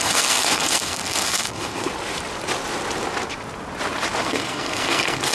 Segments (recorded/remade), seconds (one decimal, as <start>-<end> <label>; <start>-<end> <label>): 0.0-1.9 remade; 1.9-4.2 recorded; 4.2-5.3 remade